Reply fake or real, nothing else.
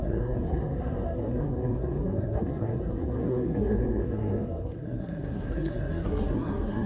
fake